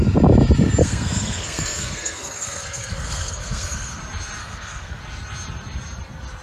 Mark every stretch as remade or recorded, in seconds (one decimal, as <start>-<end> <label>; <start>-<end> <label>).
0.0-0.8 recorded; 0.8-4.0 remade; 4.0-4.4 recorded; 4.4-5.0 remade; 5.0-6.4 recorded